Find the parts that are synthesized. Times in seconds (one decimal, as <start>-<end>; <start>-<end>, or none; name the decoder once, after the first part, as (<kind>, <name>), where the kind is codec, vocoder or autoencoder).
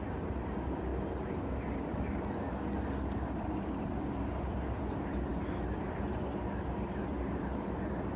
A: none